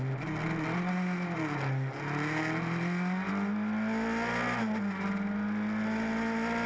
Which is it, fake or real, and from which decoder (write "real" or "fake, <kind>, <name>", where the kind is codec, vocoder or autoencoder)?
real